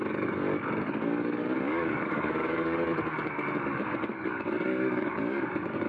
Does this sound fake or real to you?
fake